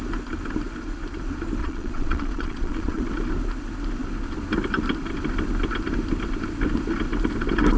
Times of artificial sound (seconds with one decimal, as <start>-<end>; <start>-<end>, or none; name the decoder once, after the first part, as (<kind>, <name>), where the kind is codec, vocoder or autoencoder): 1.6-3.0 (vocoder, Vocos)